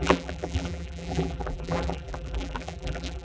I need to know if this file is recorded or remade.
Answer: remade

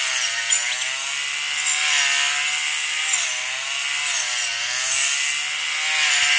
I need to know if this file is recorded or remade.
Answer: recorded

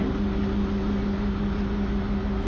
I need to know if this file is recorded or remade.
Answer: recorded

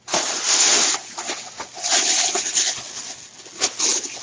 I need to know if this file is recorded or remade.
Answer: recorded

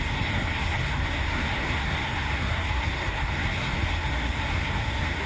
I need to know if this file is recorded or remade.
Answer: remade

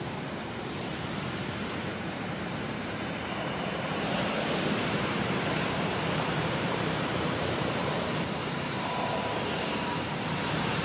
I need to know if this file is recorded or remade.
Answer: remade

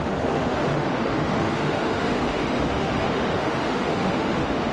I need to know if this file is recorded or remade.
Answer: remade